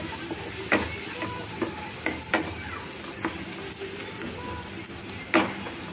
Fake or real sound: real